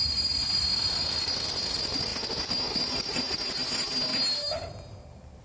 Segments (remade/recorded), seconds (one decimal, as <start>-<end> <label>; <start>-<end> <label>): 0.0-5.4 recorded